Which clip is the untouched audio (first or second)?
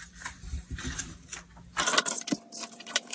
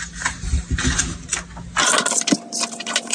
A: second